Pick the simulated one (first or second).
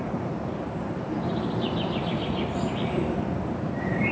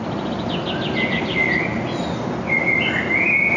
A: first